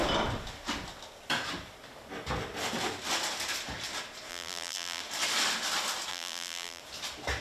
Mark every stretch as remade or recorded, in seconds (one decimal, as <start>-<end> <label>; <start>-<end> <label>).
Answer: 0.0-4.3 recorded; 4.3-5.0 remade; 5.0-6.1 recorded; 6.1-6.8 remade; 6.8-7.4 recorded